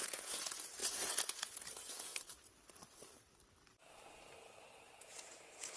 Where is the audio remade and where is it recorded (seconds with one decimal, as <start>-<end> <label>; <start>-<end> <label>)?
0.0-2.1 remade; 2.1-5.0 recorded; 5.0-5.8 remade